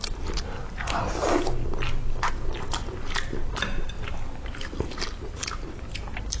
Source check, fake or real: real